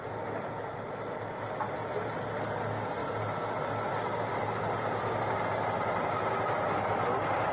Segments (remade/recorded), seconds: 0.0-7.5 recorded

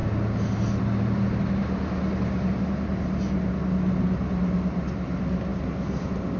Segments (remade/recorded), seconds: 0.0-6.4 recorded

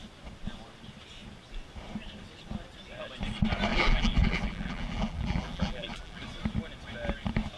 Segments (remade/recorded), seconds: 0.0-3.7 recorded; 3.7-6.2 remade; 6.2-7.6 recorded

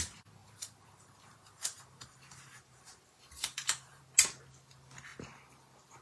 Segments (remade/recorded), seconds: 0.0-0.4 recorded; 0.4-4.0 remade; 4.0-6.0 recorded

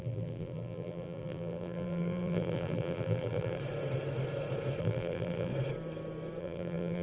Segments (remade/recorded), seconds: 0.0-3.6 remade; 3.6-4.8 recorded; 4.8-5.5 remade; 5.5-6.4 recorded; 6.4-7.0 remade

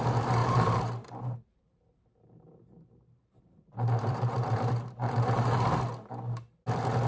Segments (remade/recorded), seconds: 0.0-0.4 recorded; 0.4-4.7 remade; 4.7-7.1 recorded